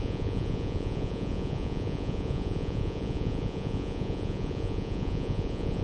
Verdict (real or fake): fake